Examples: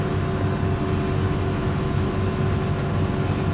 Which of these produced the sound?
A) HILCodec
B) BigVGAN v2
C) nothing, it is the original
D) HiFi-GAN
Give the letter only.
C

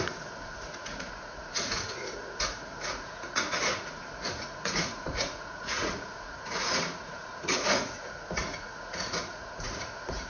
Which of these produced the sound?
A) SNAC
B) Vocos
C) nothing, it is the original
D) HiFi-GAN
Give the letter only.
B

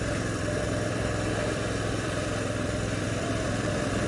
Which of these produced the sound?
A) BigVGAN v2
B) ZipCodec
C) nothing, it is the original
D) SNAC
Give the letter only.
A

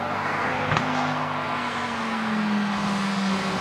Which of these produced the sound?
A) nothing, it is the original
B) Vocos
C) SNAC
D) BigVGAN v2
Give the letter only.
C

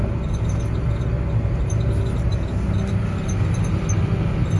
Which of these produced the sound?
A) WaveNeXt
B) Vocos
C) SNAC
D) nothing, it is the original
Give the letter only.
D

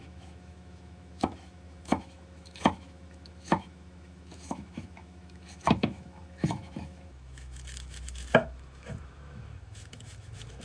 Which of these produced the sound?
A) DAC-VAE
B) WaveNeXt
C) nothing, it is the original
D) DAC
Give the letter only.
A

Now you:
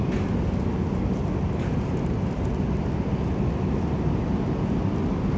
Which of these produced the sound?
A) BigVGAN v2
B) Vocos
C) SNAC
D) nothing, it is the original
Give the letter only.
D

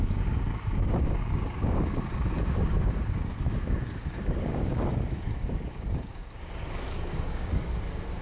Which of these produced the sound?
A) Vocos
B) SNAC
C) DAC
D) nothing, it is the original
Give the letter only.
C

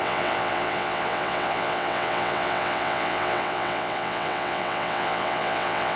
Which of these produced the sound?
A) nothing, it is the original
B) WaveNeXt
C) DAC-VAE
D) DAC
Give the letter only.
B